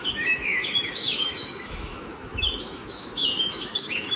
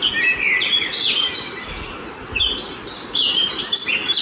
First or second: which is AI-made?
first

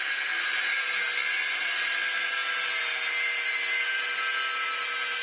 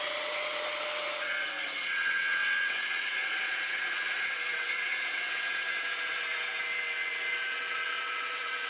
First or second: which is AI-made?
second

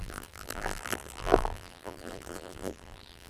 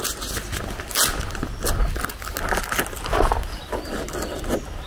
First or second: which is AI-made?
first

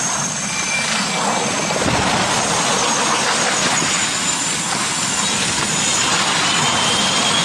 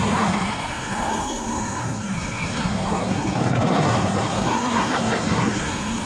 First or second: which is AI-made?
second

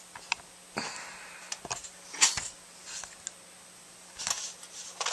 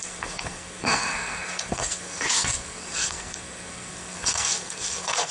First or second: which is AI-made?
second